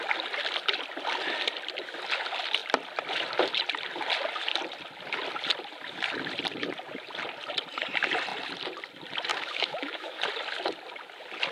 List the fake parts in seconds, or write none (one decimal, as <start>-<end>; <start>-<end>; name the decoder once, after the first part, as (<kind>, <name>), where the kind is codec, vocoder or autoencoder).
9.3-10.2 (autoencoder, DAC-VAE)